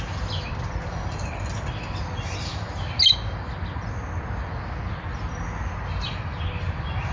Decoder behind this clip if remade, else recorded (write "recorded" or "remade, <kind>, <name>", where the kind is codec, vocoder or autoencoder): recorded